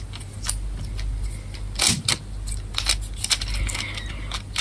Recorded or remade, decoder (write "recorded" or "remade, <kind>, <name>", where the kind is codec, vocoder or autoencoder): recorded